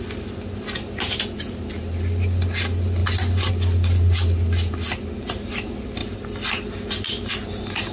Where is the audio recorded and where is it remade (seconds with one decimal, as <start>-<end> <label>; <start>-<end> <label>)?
0.0-6.0 recorded; 6.0-7.3 remade; 7.3-7.9 recorded

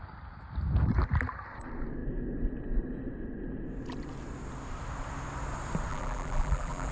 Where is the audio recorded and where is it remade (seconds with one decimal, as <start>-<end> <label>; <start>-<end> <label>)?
0.0-5.9 recorded; 5.9-6.9 remade